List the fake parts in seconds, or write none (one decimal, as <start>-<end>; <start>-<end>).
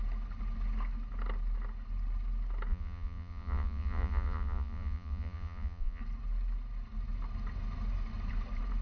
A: 2.7-6.0